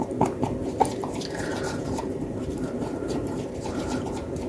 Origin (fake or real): fake